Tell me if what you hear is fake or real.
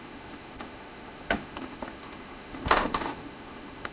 fake